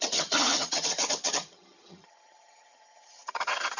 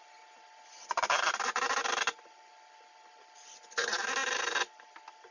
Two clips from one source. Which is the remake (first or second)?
first